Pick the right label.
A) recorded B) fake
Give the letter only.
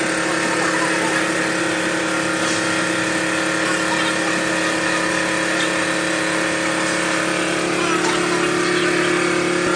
A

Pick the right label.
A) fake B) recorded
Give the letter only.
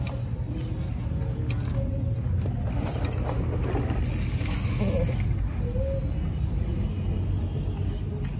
B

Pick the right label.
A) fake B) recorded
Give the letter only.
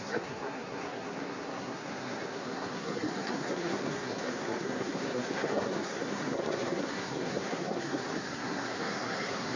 A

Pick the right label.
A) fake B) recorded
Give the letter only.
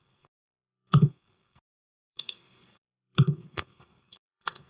A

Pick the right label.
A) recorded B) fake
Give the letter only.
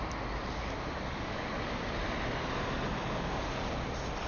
A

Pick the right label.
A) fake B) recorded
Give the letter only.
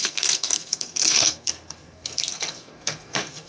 A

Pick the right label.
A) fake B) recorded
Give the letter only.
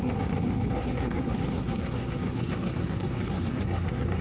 A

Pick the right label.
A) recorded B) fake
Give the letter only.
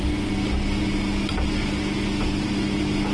A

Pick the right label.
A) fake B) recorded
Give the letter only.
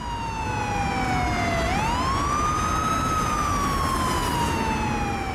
B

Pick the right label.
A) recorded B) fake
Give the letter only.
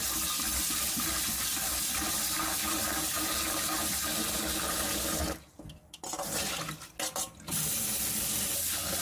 A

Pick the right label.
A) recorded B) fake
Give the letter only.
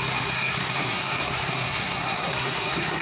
B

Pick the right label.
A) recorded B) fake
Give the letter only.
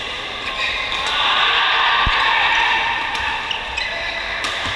A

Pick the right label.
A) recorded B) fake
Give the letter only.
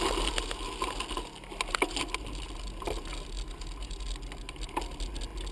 A